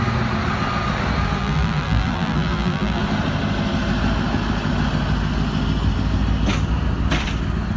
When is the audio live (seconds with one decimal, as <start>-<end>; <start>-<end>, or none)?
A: 0.0-1.4; 3.0-7.8